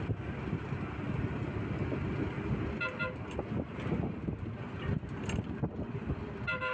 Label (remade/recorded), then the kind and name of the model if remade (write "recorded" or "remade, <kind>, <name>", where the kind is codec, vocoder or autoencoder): recorded